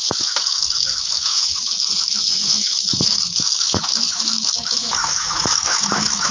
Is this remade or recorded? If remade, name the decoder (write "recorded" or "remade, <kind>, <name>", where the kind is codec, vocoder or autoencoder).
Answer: remade, autoencoder, DAC-VAE